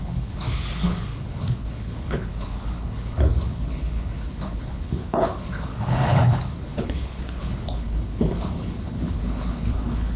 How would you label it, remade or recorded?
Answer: remade